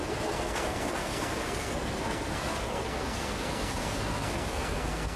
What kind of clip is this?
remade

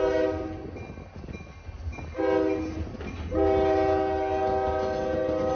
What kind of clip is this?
recorded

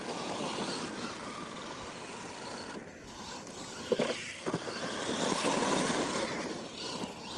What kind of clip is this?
recorded